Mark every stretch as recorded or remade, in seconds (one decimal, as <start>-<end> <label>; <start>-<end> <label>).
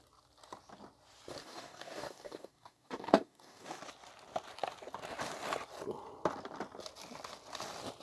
0.0-1.4 recorded; 1.4-3.8 remade; 3.8-8.0 recorded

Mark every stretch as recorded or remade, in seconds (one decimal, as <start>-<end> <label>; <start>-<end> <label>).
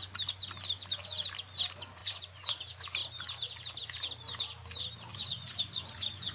0.0-2.0 recorded; 2.0-2.6 remade; 2.6-5.1 recorded; 5.1-6.3 remade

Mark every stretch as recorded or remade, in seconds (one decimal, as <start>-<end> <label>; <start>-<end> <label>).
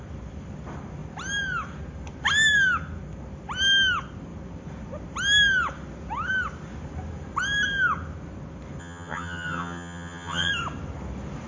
0.0-8.8 recorded; 8.8-10.5 remade; 10.5-11.5 recorded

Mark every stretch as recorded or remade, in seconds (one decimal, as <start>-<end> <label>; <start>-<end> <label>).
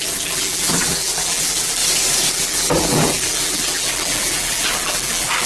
0.0-1.8 remade; 1.8-2.3 recorded; 2.3-5.5 remade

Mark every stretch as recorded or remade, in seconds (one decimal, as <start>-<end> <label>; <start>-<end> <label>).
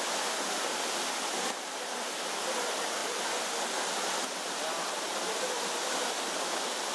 0.0-6.9 recorded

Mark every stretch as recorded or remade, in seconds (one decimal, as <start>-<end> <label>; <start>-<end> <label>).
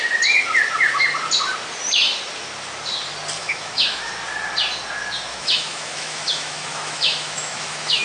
0.0-3.4 recorded; 3.4-4.1 remade; 4.1-5.3 recorded; 5.3-8.0 remade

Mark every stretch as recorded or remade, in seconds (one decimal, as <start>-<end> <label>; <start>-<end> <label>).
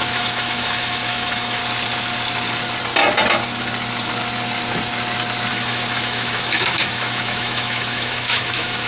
0.0-1.6 remade; 1.6-5.5 recorded; 5.5-8.9 remade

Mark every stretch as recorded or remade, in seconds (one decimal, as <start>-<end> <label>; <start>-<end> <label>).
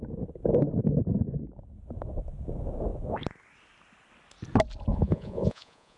0.0-4.9 recorded; 4.9-6.0 remade